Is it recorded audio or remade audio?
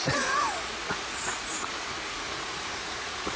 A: remade